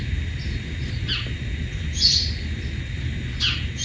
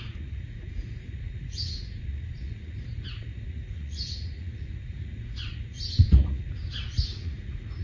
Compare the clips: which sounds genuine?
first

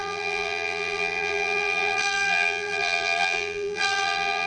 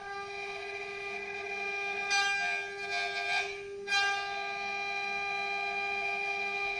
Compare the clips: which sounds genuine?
second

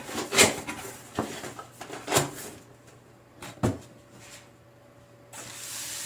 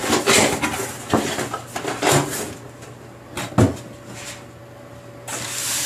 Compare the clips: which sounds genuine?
second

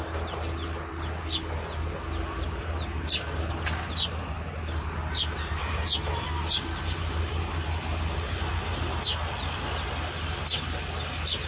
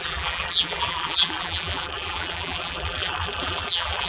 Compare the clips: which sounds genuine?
first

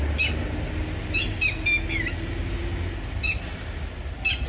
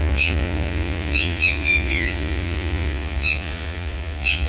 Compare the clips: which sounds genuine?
first